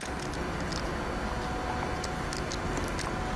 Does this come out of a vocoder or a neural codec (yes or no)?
no